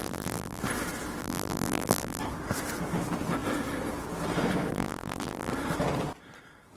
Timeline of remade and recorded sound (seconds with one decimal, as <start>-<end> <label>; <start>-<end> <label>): 0.0-0.6 remade; 0.6-1.2 recorded; 1.2-2.2 remade; 2.2-4.7 recorded; 4.7-5.5 remade; 5.5-6.8 recorded